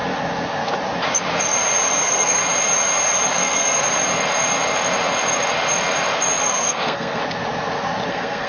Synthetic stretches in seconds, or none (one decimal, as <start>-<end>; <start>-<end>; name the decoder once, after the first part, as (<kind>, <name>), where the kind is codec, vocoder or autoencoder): 2.0-2.4 (codec, SNAC); 3.3-3.9; 6.4-7.2; 8.1-8.5